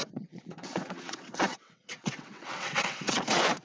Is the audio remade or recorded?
remade